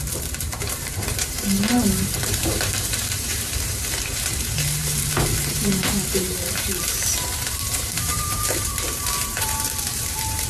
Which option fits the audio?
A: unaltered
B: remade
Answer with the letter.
B